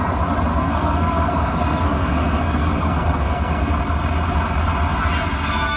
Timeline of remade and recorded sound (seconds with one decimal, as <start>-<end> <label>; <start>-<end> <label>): 0.0-0.5 recorded; 0.5-3.7 remade; 3.7-5.8 recorded